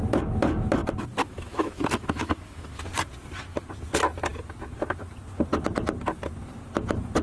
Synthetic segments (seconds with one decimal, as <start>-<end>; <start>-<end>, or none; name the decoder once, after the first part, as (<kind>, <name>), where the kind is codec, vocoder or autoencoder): 1.2-2.8 (autoencoder, DAC-VAE)